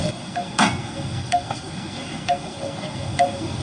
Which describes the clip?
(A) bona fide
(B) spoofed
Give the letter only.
B